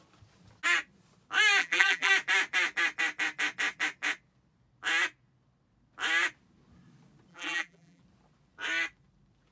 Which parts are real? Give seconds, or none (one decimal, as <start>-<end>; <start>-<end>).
0.0-1.6; 2.1-7.3; 8.0-9.5